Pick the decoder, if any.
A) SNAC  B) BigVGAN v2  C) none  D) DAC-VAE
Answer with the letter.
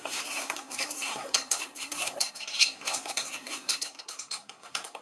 A